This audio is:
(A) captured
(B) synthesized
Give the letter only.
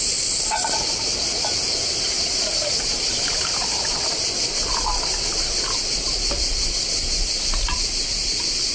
A